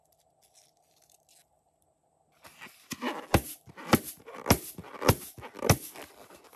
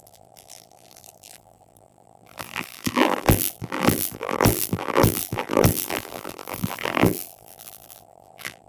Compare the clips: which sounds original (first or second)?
first